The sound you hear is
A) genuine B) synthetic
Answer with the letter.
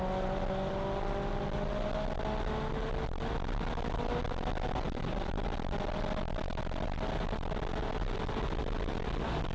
A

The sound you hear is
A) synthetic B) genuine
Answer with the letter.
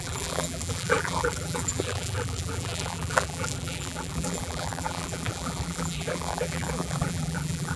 A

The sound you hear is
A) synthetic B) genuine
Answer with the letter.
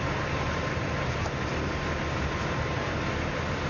B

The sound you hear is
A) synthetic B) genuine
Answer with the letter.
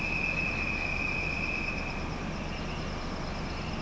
B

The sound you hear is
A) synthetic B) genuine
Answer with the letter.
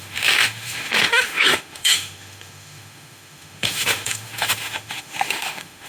A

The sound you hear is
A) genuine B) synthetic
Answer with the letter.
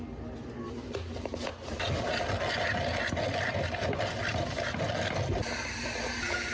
A